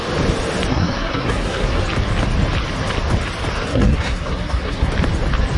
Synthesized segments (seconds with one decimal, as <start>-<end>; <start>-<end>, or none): 0.7-1.8; 3.7-4.9